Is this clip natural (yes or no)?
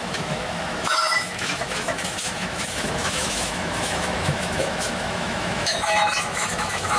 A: no